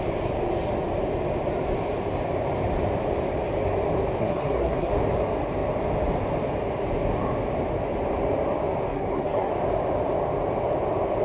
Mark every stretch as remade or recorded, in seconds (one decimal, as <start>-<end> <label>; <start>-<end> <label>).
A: 0.0-4.2 recorded; 4.2-4.9 remade; 4.9-8.9 recorded; 8.9-9.5 remade; 9.5-11.2 recorded